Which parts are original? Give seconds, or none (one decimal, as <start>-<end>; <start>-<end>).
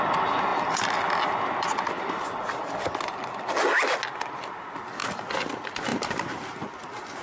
0.0-7.2